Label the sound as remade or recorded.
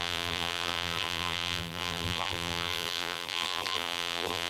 remade